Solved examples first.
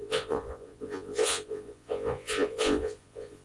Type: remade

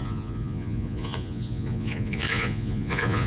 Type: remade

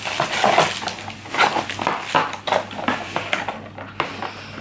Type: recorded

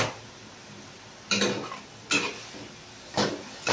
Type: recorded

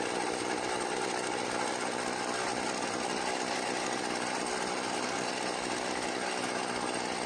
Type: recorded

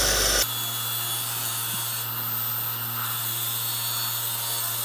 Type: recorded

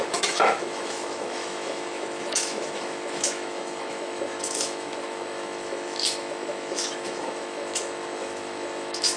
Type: remade